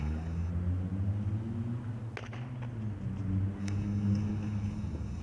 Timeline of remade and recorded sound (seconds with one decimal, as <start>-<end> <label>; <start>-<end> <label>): 0.0-0.5 remade; 0.5-3.6 recorded; 3.6-5.2 remade